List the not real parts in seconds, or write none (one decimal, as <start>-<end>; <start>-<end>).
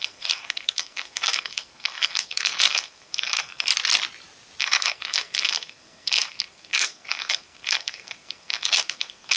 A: 0.0-3.7; 4.6-9.4